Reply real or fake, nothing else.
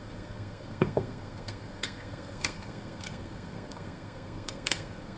fake